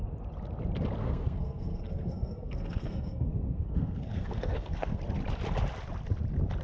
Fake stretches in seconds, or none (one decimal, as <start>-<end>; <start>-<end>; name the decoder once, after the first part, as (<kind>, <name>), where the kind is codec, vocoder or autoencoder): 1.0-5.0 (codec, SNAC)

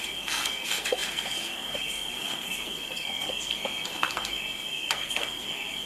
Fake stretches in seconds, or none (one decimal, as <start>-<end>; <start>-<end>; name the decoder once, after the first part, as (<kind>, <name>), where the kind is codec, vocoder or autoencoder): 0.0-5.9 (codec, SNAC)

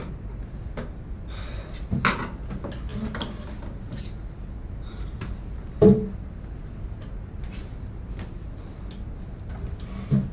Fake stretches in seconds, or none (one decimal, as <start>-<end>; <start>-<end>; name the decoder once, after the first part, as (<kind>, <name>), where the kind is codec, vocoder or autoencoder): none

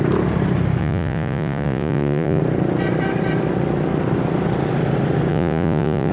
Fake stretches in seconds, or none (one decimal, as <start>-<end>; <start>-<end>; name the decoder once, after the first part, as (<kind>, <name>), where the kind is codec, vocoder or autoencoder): 0.8-2.4 (vocoder, Vocos); 5.3-6.1

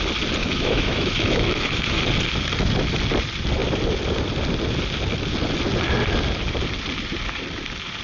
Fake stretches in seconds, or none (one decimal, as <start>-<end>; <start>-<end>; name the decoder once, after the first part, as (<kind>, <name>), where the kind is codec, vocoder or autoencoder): 0.4-2.0 (autoencoder, DAC-VAE)

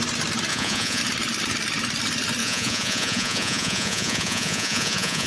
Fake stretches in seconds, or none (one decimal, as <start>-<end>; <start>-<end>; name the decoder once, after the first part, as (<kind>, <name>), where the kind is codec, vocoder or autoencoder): 0.5-1.0 (vocoder, Vocos); 2.4-5.3

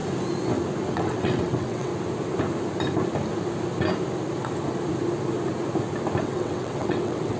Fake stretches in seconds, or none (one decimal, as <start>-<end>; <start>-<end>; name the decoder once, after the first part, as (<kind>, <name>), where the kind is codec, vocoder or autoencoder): 0.9-1.9 (vocoder, WaveNeXt); 6.2-7.4